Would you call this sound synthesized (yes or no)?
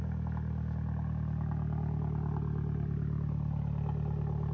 no